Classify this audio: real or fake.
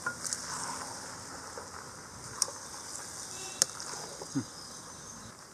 real